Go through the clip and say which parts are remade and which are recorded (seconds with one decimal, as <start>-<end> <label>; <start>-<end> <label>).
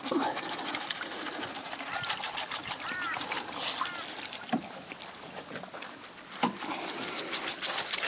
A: 0.0-8.1 recorded